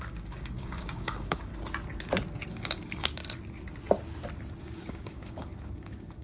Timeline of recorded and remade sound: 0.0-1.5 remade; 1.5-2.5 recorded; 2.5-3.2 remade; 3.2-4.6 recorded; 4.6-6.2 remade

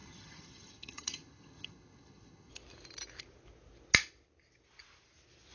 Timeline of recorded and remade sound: 0.0-2.5 remade; 2.5-5.5 recorded

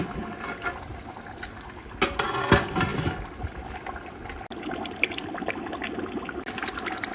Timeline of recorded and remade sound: 0.0-7.1 recorded

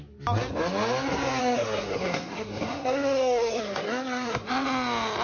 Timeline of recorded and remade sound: 0.0-1.4 recorded; 1.4-4.5 remade; 4.5-5.2 recorded

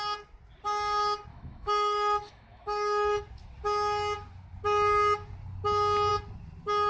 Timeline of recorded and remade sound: 0.0-1.3 recorded; 1.3-3.2 remade; 3.2-6.9 recorded

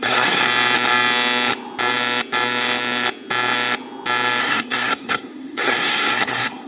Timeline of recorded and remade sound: 0.0-0.4 remade; 0.4-4.4 recorded; 4.4-6.7 remade